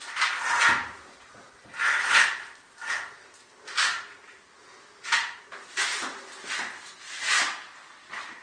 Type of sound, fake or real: real